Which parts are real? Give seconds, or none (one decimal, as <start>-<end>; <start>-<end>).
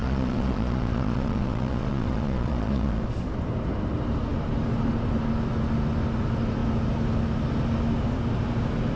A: 3.0-9.0